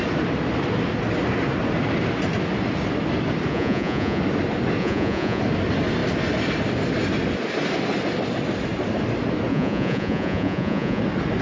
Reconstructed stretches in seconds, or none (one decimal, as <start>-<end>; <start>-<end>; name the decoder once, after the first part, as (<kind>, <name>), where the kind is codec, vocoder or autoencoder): 3.5-4.2 (vocoder, Vocos); 4.8-5.4; 9.5-11.0